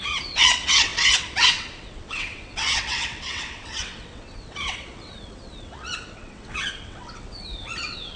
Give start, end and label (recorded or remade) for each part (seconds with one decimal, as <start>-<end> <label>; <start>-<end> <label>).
0.0-8.2 remade